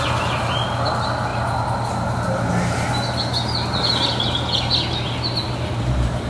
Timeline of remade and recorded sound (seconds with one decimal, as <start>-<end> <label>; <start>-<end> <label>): 0.0-6.3 recorded